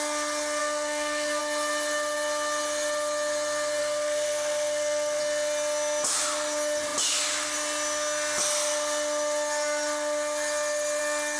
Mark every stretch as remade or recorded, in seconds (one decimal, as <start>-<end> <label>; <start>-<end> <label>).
0.0-0.6 recorded; 0.6-1.4 remade; 1.4-3.8 recorded; 3.8-5.2 remade; 5.2-11.4 recorded